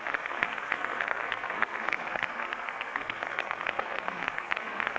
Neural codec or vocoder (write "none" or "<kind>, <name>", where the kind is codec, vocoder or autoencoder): codec, SNAC